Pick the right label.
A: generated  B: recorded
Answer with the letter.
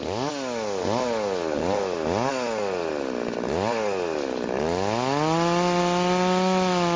B